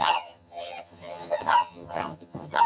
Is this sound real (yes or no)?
no